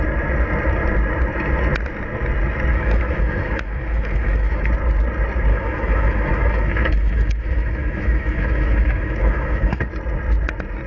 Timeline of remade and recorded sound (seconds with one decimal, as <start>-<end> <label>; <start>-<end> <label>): 0.0-2.7 recorded; 2.7-4.7 remade; 4.7-5.5 recorded; 5.5-9.8 remade; 9.8-10.9 recorded